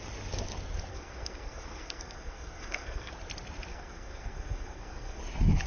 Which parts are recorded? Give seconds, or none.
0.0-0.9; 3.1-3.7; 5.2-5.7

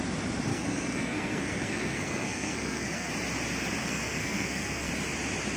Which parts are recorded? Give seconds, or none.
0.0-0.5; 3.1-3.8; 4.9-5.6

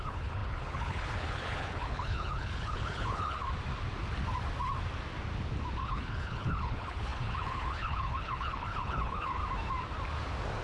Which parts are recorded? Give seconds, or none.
3.4-5.8; 9.4-10.6

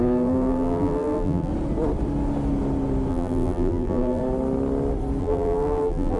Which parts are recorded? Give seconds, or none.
1.5-3.1; 4.2-5.2

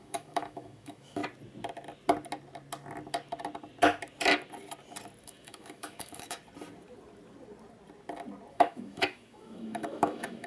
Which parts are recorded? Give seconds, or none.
1.2-5.2; 6.4-8.5